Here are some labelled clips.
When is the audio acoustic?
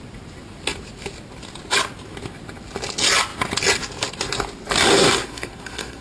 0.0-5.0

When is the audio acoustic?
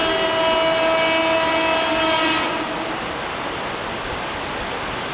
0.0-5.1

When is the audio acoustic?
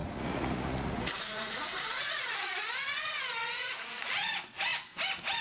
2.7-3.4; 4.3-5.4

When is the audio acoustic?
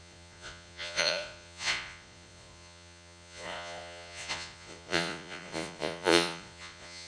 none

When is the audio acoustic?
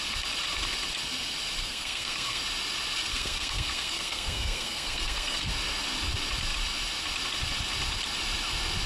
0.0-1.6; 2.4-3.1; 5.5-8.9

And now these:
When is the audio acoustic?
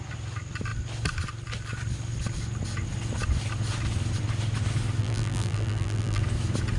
0.0-5.0; 6.2-6.8